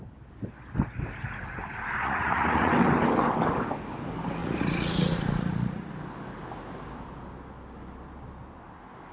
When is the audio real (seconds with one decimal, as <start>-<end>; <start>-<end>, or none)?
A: 0.0-2.0; 2.7-4.4; 5.9-9.1